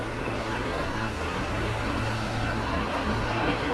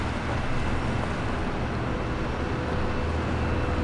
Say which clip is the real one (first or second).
second